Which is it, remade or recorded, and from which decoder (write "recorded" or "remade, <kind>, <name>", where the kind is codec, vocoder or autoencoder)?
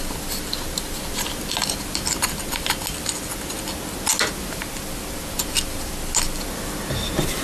recorded